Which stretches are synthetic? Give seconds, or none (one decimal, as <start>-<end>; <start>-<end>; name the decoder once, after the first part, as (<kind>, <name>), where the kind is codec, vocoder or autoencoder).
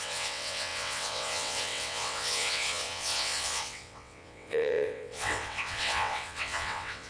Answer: 0.0-7.1 (vocoder, WaveNeXt)